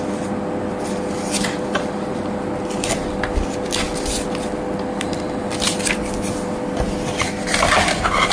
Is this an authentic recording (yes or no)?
yes